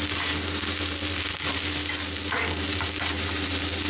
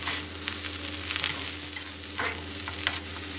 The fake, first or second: first